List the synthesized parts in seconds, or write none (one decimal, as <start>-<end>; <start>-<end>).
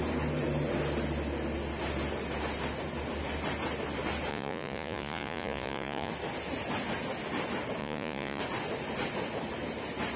4.3-6.1; 7.8-8.4